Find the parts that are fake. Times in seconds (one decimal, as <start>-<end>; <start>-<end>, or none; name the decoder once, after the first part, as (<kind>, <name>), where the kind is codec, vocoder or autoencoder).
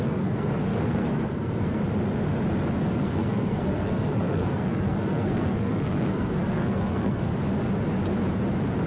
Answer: 0.0-1.8 (codec, SNAC); 2.9-7.3